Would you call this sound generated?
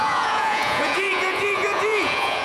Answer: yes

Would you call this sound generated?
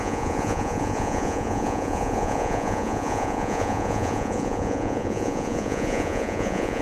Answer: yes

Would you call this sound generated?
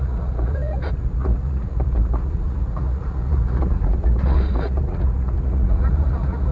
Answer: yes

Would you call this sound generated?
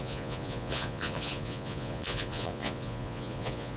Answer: yes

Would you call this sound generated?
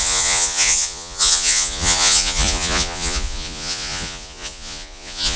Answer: yes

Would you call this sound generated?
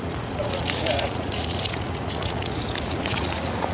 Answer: yes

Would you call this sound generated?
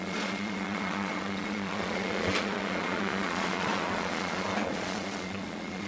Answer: yes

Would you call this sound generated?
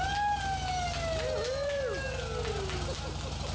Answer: no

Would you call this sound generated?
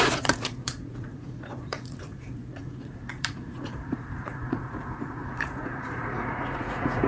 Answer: yes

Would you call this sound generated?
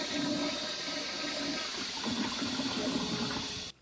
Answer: no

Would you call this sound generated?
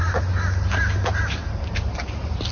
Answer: no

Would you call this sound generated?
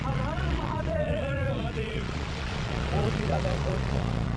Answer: yes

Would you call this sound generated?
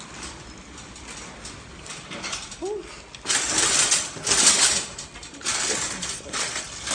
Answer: no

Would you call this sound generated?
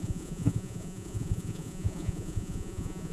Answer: yes